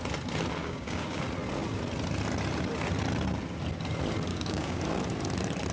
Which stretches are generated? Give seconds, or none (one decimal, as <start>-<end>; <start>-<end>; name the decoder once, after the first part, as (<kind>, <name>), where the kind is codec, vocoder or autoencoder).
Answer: 0.6-1.2 (codec, DAC); 4.3-4.8